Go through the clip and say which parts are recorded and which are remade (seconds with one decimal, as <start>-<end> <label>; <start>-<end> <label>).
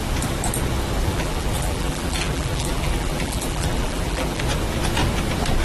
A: 0.0-1.0 recorded; 1.0-4.4 remade; 4.4-5.6 recorded